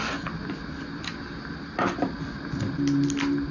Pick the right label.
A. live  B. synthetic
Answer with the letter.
A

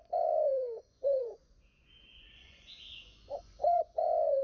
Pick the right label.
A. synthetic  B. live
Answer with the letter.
A